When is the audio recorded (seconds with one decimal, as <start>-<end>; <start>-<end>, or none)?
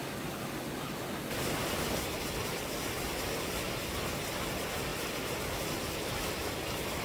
0.0-7.0